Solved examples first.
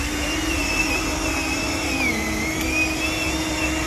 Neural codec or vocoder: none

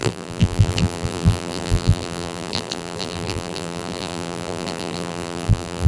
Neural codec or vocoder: vocoder, BigVGAN v2